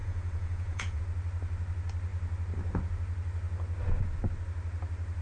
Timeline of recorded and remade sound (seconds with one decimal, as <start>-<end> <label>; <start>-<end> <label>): 0.0-1.0 remade; 1.0-5.2 recorded